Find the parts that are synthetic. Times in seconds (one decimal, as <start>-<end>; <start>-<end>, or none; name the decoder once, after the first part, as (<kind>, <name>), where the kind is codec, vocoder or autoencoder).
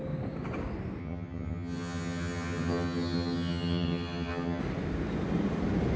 1.0-4.6 (vocoder, HiFi-GAN)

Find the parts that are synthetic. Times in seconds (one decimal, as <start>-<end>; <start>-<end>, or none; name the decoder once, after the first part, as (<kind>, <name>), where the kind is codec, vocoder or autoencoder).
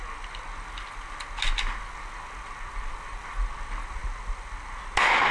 none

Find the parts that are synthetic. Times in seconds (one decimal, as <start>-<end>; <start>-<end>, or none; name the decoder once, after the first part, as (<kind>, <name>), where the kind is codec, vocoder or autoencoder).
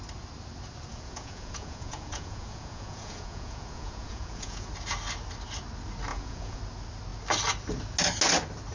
0.9-4.7 (vocoder, Vocos); 6.1-6.6